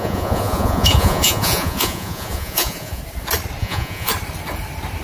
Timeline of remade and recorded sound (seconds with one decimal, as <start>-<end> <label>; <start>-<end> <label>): 0.0-3.0 remade; 3.0-3.6 recorded; 3.6-4.1 remade; 4.1-5.0 recorded